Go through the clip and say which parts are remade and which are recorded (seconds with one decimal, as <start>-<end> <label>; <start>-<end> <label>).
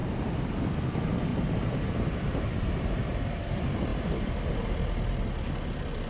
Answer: 0.0-1.3 recorded; 1.3-3.0 remade; 3.0-6.1 recorded